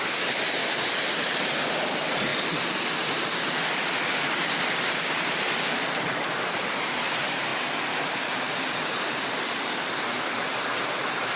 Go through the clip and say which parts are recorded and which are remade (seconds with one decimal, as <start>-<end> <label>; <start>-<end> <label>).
0.0-0.6 remade; 0.6-1.7 recorded; 1.7-2.3 remade; 2.3-5.1 recorded; 5.1-7.5 remade; 7.5-8.7 recorded; 8.7-11.4 remade